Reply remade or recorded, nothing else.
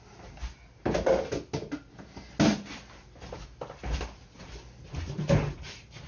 recorded